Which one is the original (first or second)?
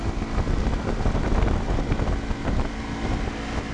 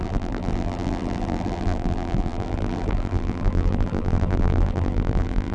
first